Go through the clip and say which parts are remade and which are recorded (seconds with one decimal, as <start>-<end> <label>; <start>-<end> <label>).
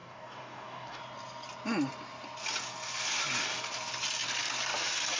0.0-1.0 remade; 1.0-5.2 recorded